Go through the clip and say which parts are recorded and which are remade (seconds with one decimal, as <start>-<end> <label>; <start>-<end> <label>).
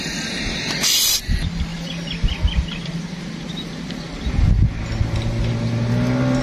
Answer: 0.0-6.4 recorded